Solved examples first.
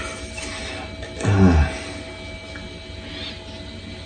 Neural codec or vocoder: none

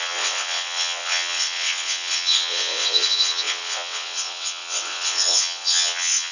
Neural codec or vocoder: vocoder, WaveNeXt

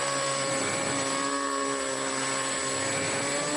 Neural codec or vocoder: none